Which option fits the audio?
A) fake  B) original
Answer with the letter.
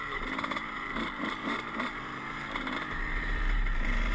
A